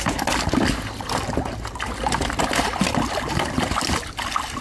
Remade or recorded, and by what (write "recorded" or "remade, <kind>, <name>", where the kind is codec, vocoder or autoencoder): recorded